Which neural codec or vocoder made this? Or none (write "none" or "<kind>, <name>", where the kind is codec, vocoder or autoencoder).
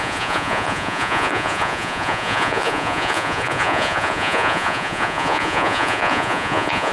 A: vocoder, Vocos